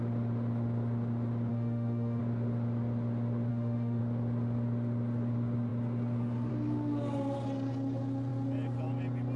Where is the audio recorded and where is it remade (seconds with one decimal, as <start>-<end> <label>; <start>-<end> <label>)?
0.0-1.5 recorded; 1.5-2.2 remade; 2.2-3.5 recorded; 3.5-4.0 remade; 4.0-9.4 recorded